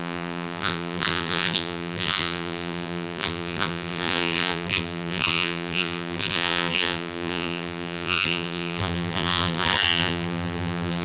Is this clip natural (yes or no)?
no